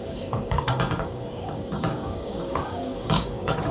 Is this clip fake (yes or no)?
yes